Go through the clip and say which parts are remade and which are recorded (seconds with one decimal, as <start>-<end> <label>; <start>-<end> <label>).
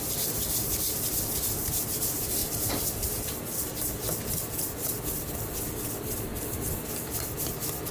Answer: 0.0-7.9 recorded